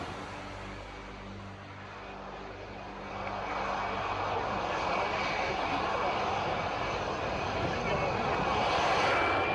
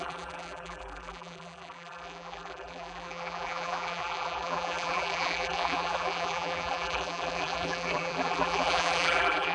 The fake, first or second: second